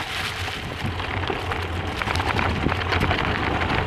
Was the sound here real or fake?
real